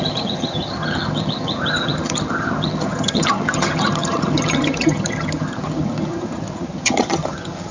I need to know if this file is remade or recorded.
remade